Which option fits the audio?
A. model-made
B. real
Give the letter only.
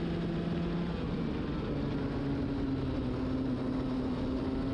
B